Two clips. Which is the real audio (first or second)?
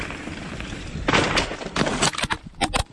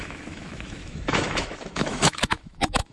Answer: first